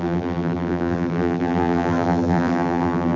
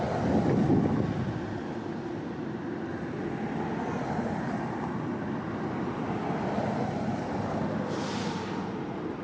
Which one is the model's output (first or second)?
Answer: first